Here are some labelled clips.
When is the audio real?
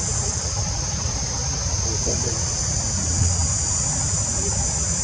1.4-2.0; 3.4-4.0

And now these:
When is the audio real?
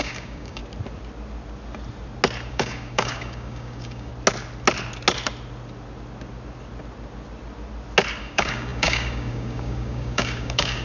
0.6-2.5; 4.1-8.2